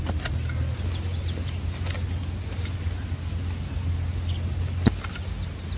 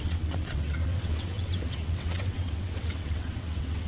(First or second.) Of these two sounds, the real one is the first